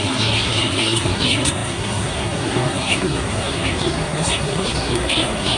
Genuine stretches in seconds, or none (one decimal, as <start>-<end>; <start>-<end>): none